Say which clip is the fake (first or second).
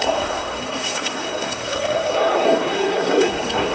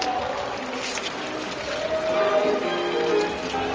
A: first